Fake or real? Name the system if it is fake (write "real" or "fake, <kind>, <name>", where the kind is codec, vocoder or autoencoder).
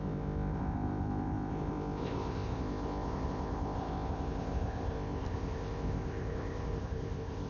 fake, codec, ZipCodec